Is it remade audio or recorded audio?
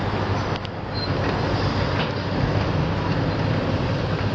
recorded